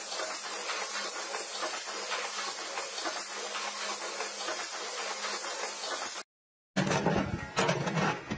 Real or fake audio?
real